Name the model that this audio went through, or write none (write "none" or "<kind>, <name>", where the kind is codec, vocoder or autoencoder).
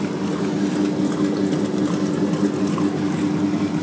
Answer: none